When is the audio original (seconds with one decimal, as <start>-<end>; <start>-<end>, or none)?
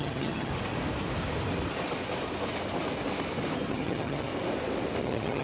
0.5-3.7; 4.3-5.0